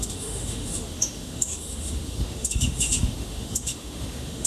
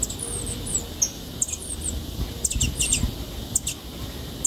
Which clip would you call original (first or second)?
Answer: second